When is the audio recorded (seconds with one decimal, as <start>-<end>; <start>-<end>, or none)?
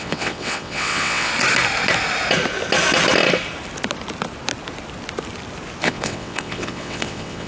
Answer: 1.3-5.8